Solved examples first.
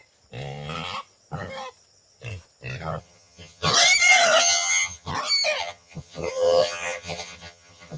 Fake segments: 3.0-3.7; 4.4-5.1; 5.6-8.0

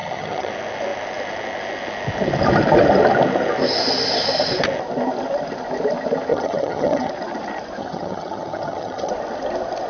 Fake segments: 0.0-0.5; 6.3-7.1; 7.8-9.1

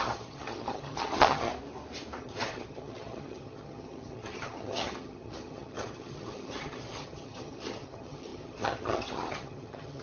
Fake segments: 0.0-1.5; 2.2-10.0